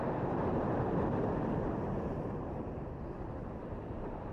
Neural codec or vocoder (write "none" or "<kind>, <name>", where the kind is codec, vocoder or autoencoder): vocoder, BigVGAN v2